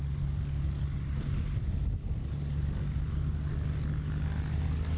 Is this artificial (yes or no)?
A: no